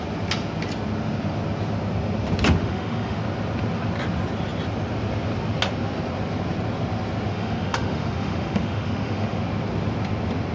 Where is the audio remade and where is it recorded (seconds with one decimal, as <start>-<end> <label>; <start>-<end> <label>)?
0.0-2.6 recorded; 2.6-3.2 remade; 3.2-7.3 recorded; 7.3-9.4 remade; 9.4-10.5 recorded